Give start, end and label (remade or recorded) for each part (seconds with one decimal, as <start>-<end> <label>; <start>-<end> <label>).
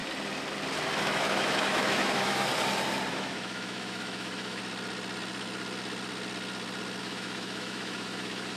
0.0-1.0 recorded; 1.0-2.5 remade; 2.5-3.1 recorded; 3.1-4.6 remade; 4.6-7.0 recorded; 7.0-8.6 remade